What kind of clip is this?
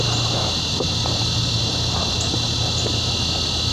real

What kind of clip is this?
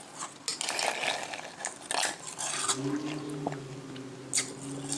real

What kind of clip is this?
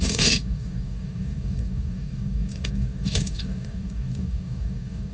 fake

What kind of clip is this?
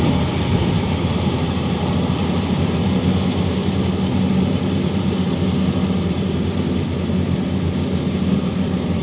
real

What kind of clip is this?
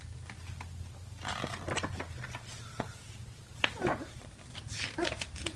real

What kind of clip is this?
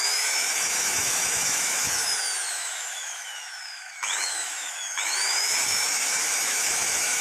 fake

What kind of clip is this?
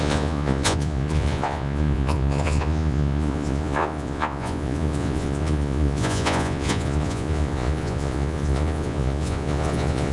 fake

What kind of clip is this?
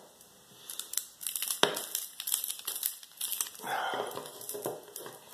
real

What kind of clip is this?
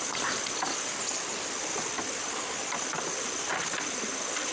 real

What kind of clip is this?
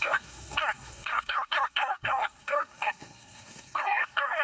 fake